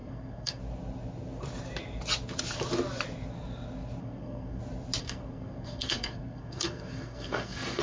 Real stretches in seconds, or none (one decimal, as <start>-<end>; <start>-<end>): 0.6-4.0; 4.6-5.0